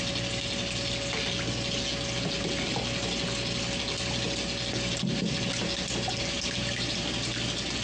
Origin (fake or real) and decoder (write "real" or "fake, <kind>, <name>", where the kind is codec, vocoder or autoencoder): real